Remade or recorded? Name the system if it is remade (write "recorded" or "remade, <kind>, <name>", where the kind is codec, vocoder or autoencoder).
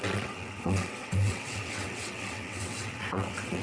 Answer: remade, vocoder, WaveNeXt